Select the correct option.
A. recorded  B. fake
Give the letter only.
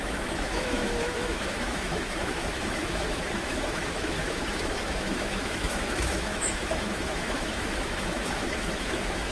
B